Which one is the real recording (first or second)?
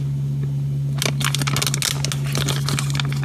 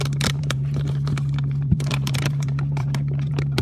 first